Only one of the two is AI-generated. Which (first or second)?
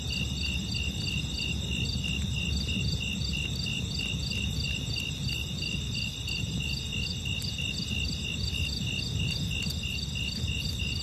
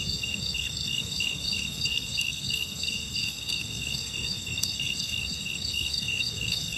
second